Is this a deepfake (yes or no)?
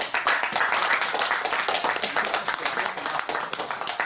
no